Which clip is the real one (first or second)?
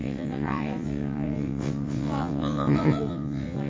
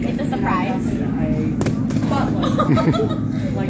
second